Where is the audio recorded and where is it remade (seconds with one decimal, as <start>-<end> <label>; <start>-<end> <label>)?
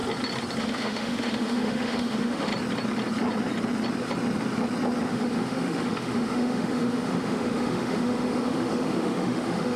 0.0-0.6 recorded; 0.6-2.5 remade; 2.5-5.1 recorded; 5.1-9.8 remade